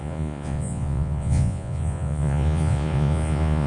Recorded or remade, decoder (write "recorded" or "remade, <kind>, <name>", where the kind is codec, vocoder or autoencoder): remade, vocoder, Vocos